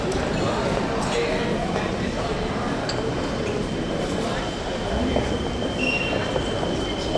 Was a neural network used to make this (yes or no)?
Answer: no